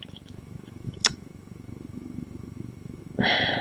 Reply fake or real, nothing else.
fake